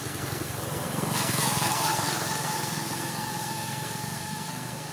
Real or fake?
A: fake